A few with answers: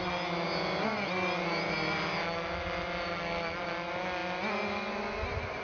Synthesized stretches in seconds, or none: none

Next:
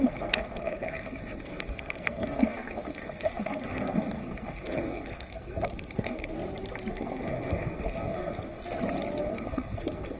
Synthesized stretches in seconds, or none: 0.0-6.3 (codec, SNAC); 6.9-8.6; 9.2-10.2

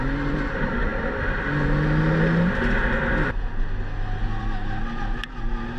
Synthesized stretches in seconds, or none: none

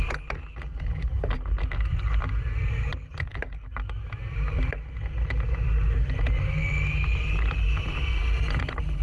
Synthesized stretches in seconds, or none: none